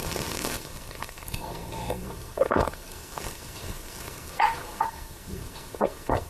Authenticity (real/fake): fake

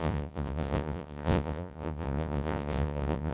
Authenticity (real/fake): fake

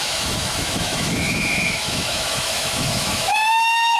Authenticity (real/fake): fake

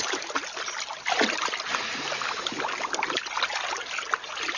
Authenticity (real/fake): real